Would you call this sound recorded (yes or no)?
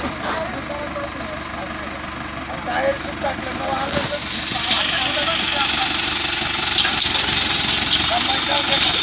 yes